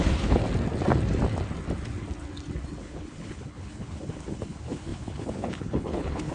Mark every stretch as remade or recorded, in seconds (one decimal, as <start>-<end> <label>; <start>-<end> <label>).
0.0-0.4 remade; 0.4-2.8 recorded; 2.8-6.3 remade